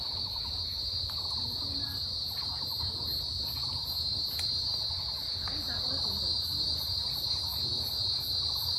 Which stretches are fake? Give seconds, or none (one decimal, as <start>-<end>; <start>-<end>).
none

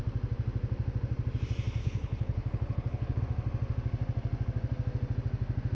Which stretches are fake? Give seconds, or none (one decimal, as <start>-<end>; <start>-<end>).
1.8-3.2

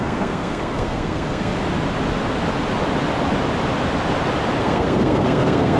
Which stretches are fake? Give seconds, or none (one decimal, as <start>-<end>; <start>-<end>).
0.0-1.5; 4.6-5.8

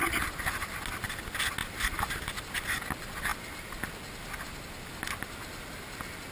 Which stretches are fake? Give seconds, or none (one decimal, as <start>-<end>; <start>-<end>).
none

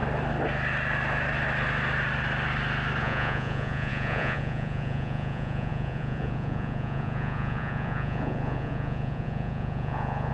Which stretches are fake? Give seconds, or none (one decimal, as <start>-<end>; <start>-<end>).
3.0-10.3

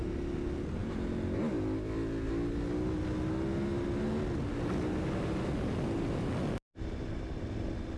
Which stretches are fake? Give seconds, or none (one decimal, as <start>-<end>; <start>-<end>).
none

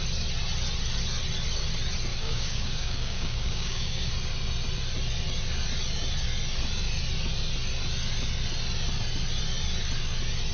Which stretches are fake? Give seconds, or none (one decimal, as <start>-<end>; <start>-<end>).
2.1-4.1

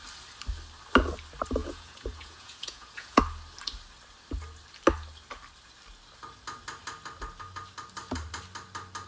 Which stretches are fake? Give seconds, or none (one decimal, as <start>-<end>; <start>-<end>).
1.6-3.2